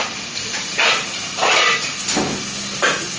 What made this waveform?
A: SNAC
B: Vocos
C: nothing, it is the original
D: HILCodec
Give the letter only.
C